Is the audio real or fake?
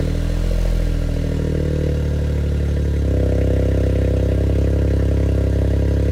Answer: real